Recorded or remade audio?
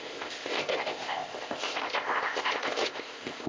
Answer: remade